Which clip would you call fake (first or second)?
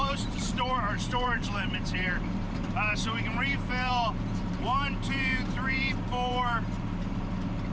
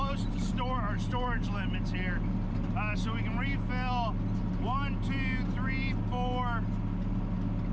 first